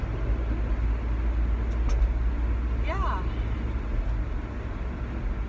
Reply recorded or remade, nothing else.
recorded